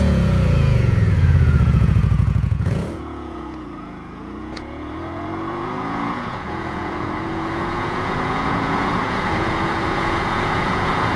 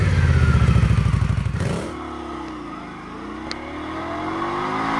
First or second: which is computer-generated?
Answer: first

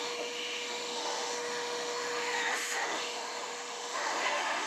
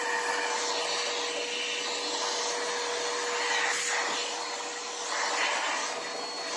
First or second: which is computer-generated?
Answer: first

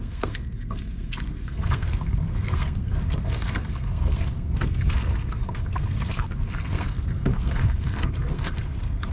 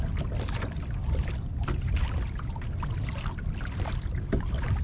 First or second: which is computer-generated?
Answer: first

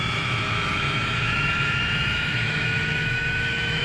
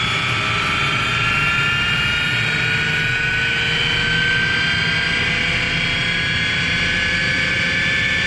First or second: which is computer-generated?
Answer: first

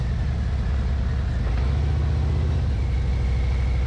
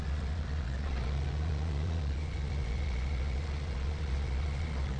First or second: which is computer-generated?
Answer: second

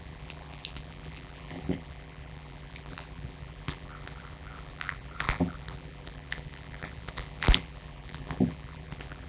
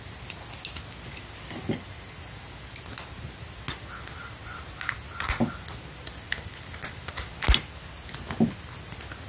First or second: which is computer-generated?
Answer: first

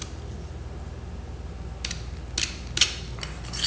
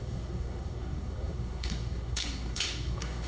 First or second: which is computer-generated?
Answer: second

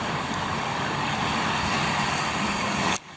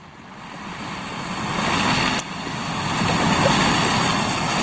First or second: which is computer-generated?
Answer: first